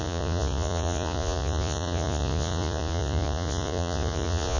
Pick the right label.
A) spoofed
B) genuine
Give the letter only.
A